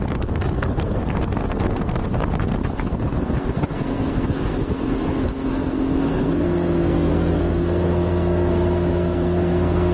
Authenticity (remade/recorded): remade